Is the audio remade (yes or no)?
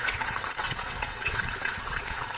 yes